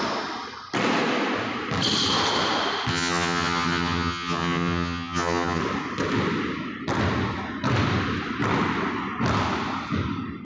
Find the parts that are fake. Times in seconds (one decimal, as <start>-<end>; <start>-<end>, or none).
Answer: 2.9-5.6